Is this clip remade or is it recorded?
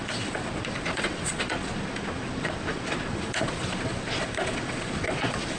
remade